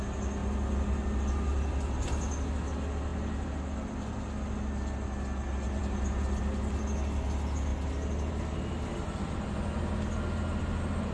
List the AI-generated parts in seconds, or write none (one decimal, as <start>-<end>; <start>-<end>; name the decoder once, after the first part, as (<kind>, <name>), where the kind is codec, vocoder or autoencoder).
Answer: none